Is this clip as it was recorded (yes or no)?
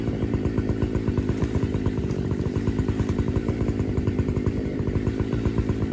no